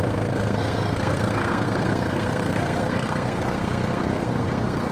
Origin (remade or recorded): remade